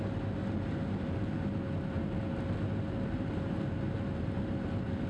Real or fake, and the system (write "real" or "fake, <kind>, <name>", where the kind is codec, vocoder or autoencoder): real